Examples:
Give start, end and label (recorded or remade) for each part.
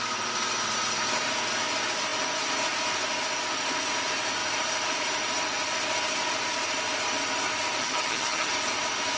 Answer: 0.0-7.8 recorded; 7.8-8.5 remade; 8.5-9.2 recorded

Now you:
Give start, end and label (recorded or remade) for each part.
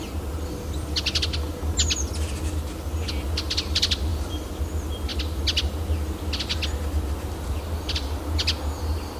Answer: 0.0-4.1 recorded; 4.1-4.6 remade; 4.6-9.2 recorded